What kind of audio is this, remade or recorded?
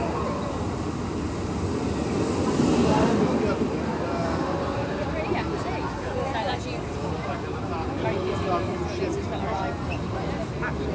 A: recorded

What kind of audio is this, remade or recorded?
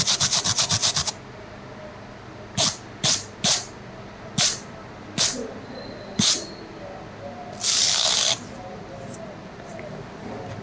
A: recorded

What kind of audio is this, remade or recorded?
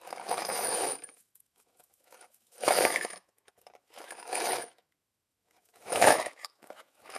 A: remade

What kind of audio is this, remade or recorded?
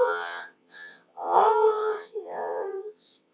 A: remade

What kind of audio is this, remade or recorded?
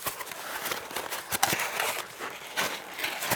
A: recorded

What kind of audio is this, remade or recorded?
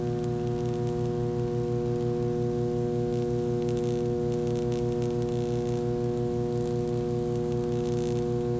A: recorded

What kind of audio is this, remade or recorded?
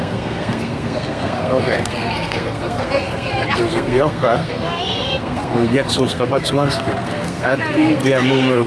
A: remade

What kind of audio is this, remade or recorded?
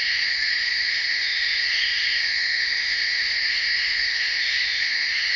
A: remade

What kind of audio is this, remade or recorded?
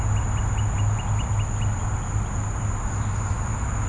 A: recorded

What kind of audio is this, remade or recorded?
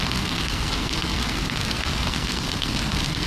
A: remade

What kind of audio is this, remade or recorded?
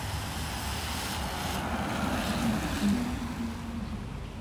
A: recorded